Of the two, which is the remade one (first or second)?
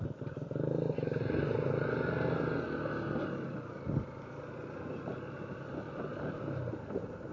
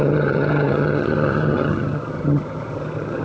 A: second